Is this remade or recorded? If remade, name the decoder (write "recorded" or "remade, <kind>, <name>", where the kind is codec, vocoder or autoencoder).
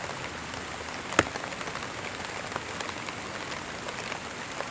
recorded